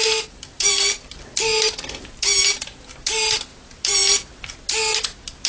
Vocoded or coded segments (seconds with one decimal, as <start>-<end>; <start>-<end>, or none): 0.0-0.6